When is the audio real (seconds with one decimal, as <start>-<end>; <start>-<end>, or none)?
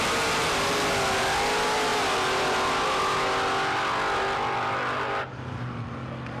0.0-6.4